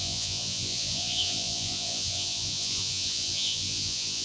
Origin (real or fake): fake